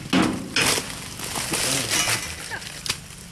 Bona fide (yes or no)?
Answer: yes